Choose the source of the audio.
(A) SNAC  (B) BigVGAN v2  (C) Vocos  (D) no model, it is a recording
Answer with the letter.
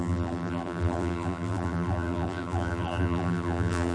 B